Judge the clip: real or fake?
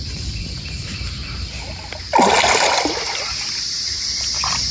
real